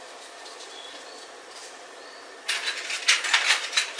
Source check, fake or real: real